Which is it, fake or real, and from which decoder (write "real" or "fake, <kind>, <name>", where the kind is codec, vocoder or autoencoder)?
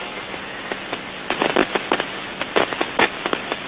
real